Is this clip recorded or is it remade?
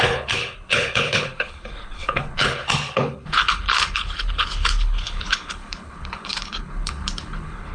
remade